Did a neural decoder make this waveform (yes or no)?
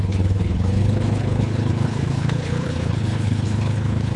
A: yes